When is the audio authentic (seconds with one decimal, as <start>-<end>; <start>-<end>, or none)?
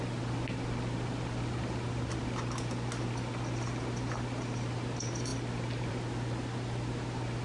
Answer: 0.0-7.4